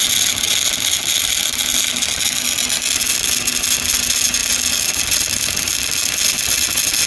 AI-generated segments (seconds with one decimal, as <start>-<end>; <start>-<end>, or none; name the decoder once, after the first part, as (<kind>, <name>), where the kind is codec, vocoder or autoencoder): none